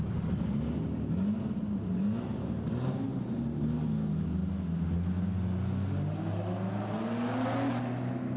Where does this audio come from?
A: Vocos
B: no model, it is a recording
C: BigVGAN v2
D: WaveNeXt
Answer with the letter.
B